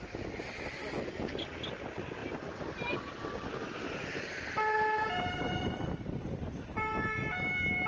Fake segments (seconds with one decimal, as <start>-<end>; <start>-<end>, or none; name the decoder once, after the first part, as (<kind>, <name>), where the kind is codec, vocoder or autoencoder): 2.2-3.1 (vocoder, BigVGAN v2); 3.6-7.9